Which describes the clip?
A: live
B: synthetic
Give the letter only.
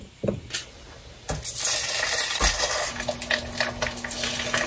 A